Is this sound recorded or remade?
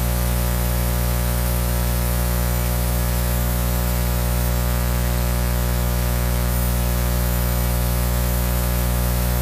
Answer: remade